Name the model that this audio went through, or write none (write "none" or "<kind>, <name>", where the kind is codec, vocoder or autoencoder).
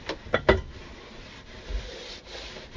none